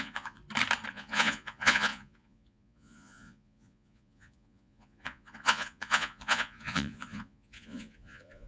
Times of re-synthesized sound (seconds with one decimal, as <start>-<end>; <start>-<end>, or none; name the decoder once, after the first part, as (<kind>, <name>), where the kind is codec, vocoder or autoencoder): 0.0-0.4 (vocoder, Vocos); 0.9-8.5